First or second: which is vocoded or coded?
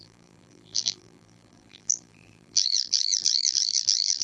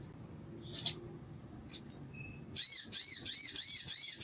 first